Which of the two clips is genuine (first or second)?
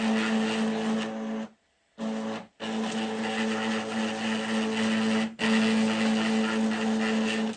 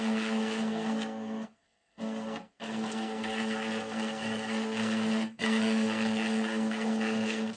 first